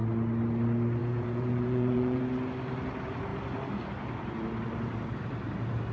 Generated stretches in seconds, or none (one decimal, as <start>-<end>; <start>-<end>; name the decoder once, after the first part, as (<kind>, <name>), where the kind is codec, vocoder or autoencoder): 1.0-2.2 (vocoder, Vocos)